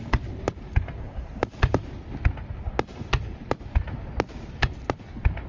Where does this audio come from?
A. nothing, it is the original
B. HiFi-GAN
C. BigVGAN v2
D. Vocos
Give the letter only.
A